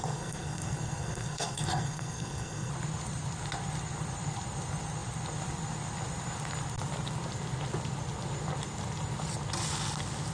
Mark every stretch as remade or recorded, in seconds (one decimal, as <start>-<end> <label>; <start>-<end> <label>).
0.0-2.7 remade; 2.7-10.3 recorded